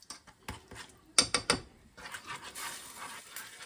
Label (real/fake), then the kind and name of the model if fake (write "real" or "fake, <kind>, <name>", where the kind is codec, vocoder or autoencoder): real